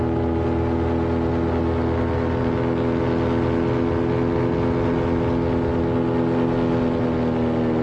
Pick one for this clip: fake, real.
real